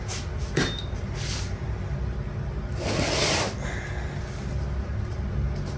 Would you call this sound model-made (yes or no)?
no